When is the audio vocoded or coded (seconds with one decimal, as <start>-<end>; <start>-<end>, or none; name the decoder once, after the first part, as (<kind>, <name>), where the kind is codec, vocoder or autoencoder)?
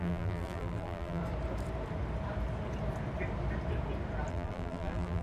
0.0-1.2 (vocoder, BigVGAN v2); 4.3-5.2